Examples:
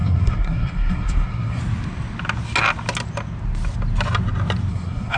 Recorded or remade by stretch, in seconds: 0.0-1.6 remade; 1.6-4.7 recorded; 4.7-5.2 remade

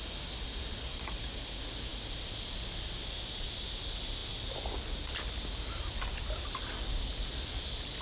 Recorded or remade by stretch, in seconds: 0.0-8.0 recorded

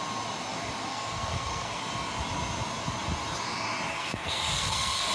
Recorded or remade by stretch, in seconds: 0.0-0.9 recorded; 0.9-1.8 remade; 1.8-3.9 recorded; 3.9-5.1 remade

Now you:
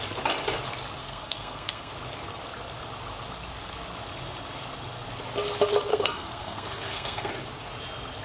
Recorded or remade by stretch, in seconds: 0.0-1.0 recorded; 1.0-1.9 remade; 1.9-5.9 recorded; 5.9-7.3 remade; 7.3-8.2 recorded

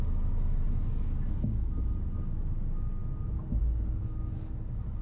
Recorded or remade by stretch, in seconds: 0.0-5.0 recorded

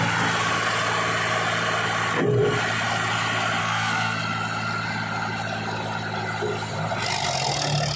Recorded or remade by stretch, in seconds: 0.0-3.6 recorded; 3.6-4.2 remade; 4.2-8.0 recorded

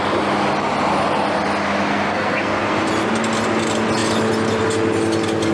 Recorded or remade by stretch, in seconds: 0.0-1.9 recorded; 1.9-2.9 remade; 2.9-5.5 recorded

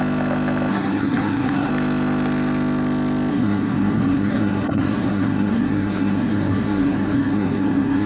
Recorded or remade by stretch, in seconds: 0.0-0.7 recorded; 0.7-1.7 remade; 1.7-3.3 recorded; 3.3-8.1 remade